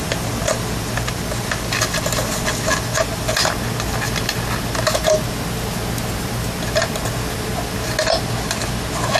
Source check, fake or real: real